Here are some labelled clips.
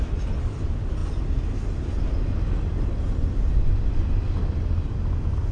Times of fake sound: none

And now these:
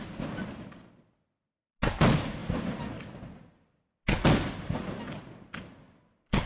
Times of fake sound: none